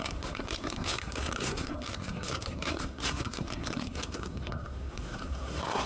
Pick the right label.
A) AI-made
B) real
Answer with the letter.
A